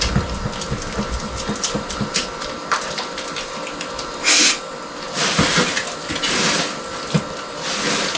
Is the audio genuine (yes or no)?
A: yes